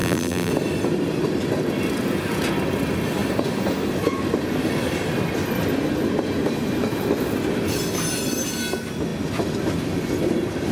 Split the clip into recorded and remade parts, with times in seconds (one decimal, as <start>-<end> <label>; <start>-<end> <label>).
0.0-0.5 remade; 0.5-10.7 recorded